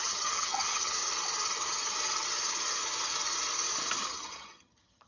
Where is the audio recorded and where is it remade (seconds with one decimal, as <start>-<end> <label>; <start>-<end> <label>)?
0.0-1.0 remade; 1.0-4.1 recorded; 4.1-5.1 remade